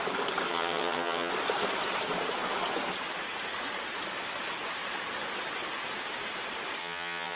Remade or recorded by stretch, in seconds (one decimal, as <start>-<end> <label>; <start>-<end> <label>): 0.0-0.5 recorded; 0.5-1.3 remade; 1.3-6.8 recorded; 6.8-7.4 remade

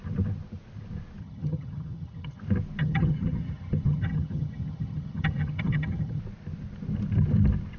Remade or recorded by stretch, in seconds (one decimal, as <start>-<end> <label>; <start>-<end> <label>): 0.0-1.2 recorded; 1.2-2.4 remade; 2.4-2.8 recorded; 2.8-6.2 remade; 6.2-7.8 recorded